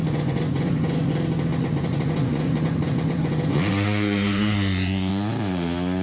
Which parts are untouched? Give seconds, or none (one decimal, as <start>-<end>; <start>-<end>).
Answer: 1.1-1.5; 5.1-6.0